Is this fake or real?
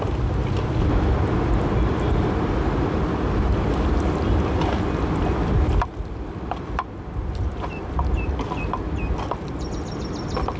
real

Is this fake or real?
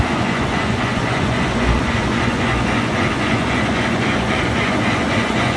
fake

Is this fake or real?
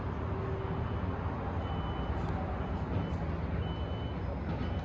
real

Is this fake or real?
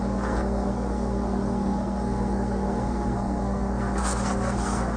fake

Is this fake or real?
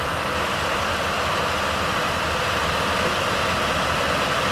real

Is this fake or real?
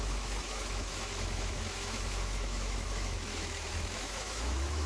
fake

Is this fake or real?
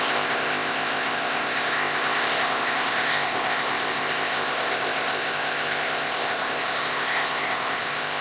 fake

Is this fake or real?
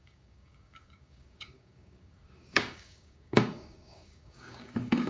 fake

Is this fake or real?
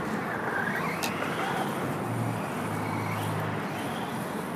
real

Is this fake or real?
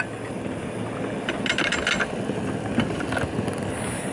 real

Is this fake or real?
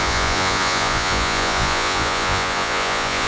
fake